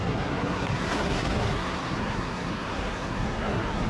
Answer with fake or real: fake